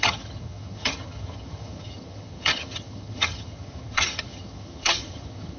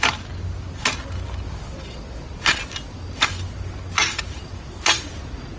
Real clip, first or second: second